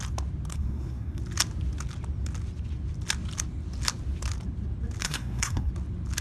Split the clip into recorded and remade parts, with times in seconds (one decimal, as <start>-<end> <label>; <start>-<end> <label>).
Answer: 0.0-0.5 recorded; 0.5-1.2 remade; 1.2-5.0 recorded; 5.0-5.7 remade; 5.7-6.2 recorded